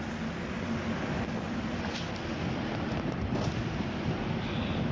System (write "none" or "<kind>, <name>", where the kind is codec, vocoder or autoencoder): none